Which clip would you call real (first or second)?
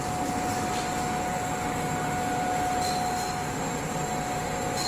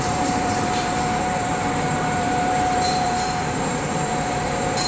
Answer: first